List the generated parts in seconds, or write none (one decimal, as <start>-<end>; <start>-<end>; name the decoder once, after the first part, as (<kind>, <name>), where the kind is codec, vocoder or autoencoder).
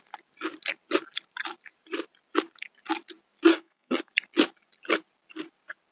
3.5-4.1 (codec, SNAC)